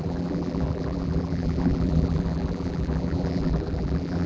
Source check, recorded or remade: remade